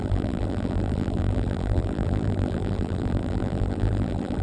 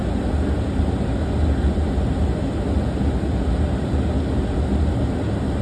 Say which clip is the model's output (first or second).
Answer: first